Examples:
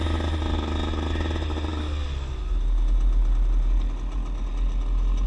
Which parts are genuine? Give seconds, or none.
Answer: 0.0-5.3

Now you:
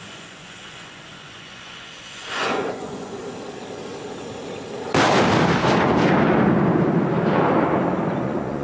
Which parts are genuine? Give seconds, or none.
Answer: 3.2-8.1

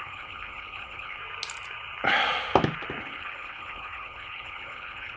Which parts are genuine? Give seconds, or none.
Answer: 1.2-3.0

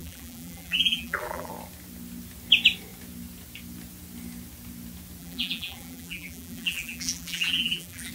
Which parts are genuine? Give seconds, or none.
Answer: 1.5-5.2

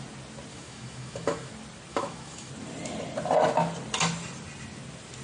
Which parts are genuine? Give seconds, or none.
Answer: 0.0-0.5; 1.5-1.9; 2.5-5.2

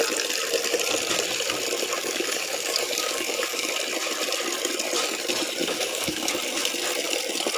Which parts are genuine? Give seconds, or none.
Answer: 0.0-2.0; 3.7-5.6; 6.3-7.6